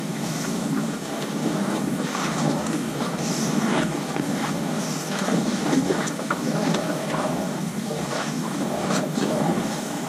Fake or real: fake